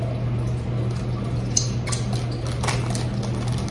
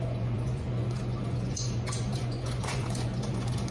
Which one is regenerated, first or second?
second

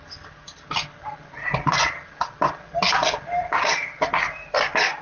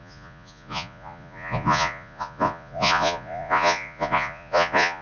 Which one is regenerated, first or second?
second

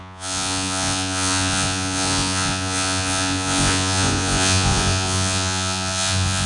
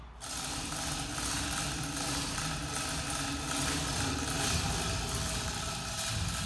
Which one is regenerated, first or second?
first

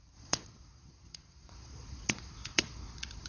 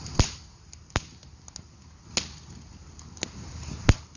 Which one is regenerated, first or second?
first